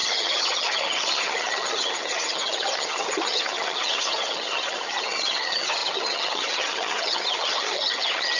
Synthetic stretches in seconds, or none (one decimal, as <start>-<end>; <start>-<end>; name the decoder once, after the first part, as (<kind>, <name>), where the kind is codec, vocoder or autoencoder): 0.0-8.4 (vocoder, HiFi-GAN)